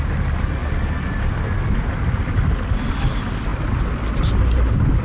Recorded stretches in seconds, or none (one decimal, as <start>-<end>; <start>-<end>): 0.0-5.0